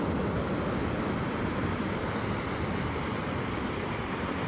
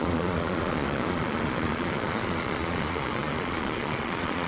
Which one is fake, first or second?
second